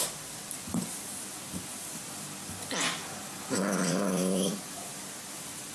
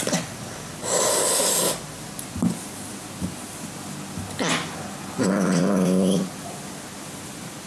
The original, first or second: second